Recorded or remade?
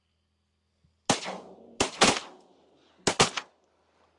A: recorded